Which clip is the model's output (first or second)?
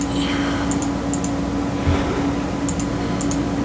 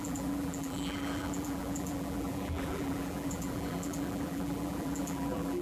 second